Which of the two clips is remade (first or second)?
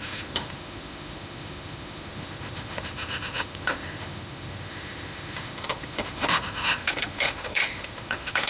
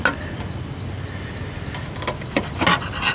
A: first